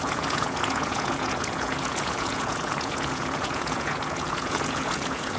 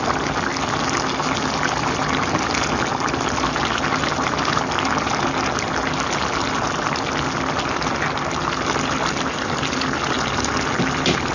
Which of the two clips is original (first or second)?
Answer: second